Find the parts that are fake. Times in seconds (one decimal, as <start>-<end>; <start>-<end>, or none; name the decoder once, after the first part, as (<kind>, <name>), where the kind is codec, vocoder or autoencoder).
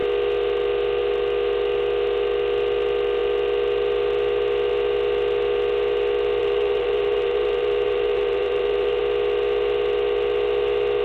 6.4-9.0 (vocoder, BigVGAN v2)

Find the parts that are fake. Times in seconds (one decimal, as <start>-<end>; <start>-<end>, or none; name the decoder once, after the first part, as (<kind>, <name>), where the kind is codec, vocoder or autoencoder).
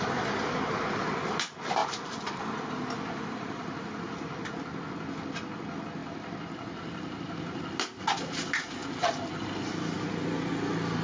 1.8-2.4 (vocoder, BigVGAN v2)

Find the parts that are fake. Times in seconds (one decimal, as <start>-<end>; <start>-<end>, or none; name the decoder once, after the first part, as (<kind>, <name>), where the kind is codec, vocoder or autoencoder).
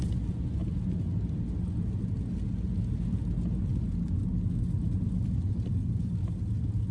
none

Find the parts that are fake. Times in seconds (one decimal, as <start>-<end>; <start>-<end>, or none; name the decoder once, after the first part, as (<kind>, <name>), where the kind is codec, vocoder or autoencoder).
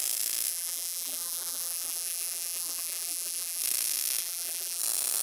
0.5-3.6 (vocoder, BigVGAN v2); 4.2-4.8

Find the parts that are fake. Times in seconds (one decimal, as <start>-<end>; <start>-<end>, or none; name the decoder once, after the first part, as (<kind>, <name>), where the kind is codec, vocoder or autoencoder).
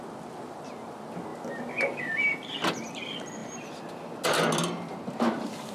none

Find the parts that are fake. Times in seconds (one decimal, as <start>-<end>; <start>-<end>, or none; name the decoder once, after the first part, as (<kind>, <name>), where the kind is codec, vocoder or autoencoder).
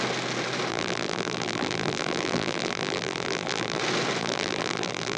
0.7-3.8 (vocoder, BigVGAN v2); 4.2-5.2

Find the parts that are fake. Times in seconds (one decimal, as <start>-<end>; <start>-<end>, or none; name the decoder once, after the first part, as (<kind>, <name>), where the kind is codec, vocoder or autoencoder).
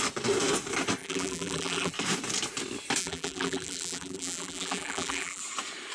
1.0-1.9 (vocoder, BigVGAN v2); 3.0-5.4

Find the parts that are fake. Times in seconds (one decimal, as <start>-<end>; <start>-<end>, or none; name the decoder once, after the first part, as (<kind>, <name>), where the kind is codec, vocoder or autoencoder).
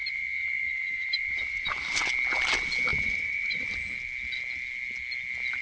0.0-2.0 (vocoder, BigVGAN v2); 2.9-3.7